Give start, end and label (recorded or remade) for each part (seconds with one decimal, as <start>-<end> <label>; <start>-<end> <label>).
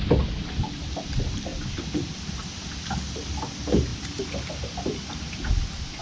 0.0-6.0 recorded